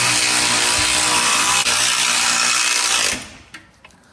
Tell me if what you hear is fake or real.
real